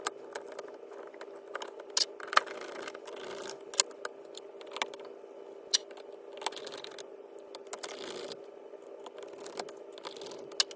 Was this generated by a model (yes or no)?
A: no